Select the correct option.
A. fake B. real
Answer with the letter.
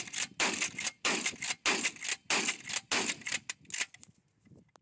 B